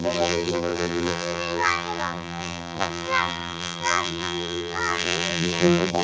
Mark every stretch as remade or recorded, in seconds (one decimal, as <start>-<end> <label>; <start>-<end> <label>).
0.0-6.0 remade